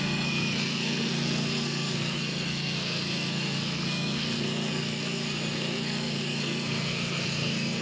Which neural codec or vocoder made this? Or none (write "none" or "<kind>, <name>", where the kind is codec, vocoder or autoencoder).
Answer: codec, SNAC